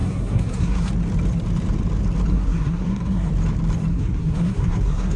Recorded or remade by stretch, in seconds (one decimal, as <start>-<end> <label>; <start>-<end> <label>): 0.0-0.9 remade; 0.9-2.3 recorded; 2.3-3.3 remade; 3.3-3.9 recorded; 3.9-5.2 remade